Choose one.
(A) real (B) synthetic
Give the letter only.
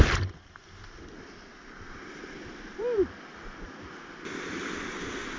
A